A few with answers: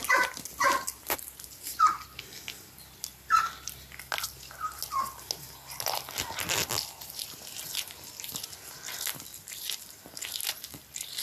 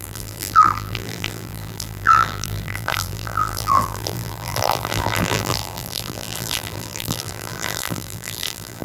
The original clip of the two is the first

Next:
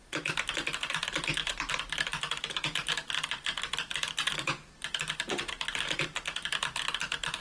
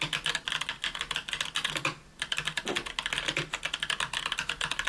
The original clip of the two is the second